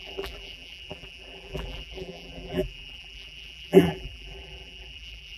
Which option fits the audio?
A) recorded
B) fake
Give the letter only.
B